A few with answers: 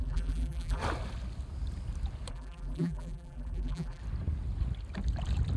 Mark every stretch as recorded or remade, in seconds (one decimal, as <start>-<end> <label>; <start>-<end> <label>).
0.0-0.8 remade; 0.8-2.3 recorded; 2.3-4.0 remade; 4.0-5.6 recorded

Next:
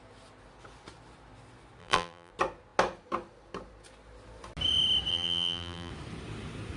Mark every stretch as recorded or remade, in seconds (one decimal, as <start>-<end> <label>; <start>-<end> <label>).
0.0-1.8 recorded; 1.8-2.3 remade; 2.3-5.1 recorded; 5.1-5.9 remade; 5.9-6.8 recorded

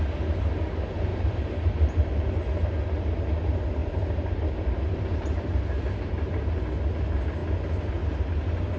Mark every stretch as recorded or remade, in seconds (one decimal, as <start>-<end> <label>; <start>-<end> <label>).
0.0-1.1 recorded; 1.1-2.3 remade; 2.3-3.8 recorded; 3.8-6.7 remade; 6.7-8.8 recorded